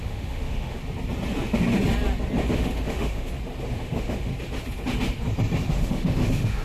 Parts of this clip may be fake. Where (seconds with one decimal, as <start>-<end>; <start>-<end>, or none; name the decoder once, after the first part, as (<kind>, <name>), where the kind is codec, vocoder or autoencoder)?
0.0-0.8 (autoencoder, DAC-VAE); 2.5-3.3; 3.8-4.3; 5.8-6.6